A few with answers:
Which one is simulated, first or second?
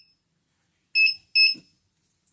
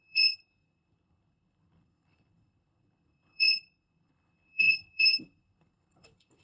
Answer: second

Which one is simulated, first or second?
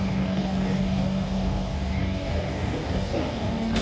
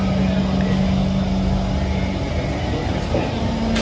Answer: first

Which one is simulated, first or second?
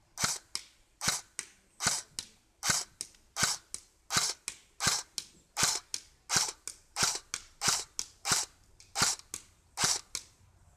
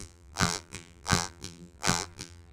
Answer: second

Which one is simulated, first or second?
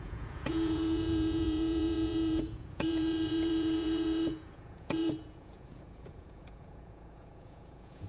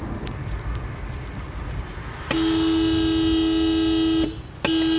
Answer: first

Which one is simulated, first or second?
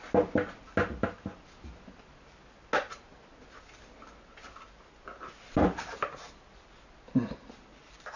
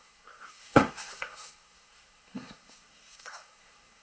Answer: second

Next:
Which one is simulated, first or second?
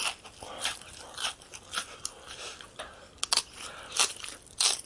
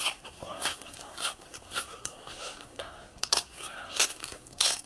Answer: second